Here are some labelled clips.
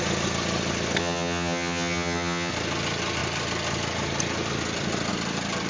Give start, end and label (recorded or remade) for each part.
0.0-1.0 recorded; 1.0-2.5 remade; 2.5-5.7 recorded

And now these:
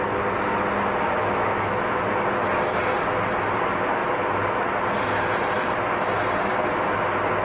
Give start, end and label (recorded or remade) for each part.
0.0-1.2 recorded; 1.2-2.0 remade; 2.0-7.4 recorded

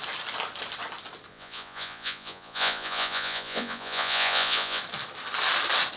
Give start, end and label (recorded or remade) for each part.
0.0-1.3 recorded; 1.3-4.8 remade; 4.8-6.0 recorded

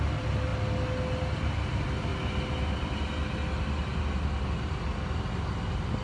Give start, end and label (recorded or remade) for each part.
0.0-6.0 recorded

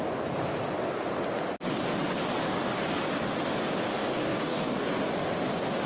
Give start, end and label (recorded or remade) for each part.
0.0-3.9 recorded; 3.9-4.9 remade; 4.9-5.9 recorded